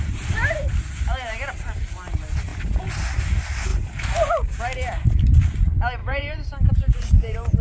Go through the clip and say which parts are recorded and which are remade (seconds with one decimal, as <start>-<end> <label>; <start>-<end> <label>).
0.0-6.0 recorded; 6.0-6.7 remade; 6.7-7.6 recorded